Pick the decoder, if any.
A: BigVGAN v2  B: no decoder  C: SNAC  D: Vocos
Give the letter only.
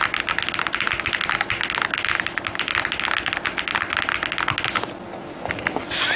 B